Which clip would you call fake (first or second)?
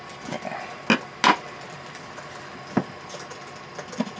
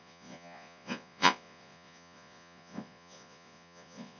second